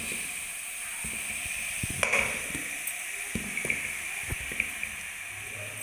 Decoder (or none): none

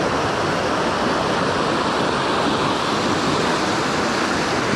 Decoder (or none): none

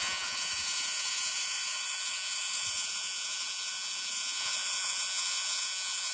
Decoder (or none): vocoder, Vocos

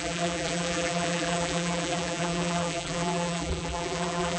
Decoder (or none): vocoder, BigVGAN v2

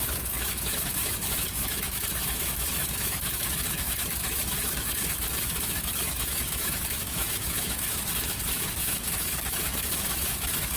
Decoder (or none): autoencoder, DAC-VAE